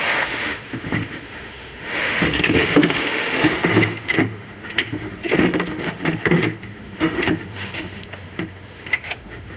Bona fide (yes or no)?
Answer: no